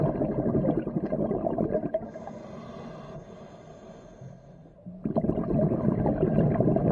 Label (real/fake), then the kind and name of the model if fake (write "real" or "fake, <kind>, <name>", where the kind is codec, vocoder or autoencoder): real